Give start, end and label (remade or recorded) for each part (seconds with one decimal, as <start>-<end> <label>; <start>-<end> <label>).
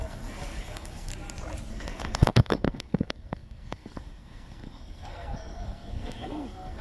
0.0-1.1 remade; 1.1-1.7 recorded; 1.7-6.8 remade